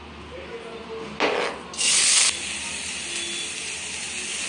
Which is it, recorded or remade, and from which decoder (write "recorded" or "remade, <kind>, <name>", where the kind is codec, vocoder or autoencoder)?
recorded